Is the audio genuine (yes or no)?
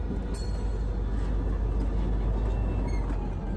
yes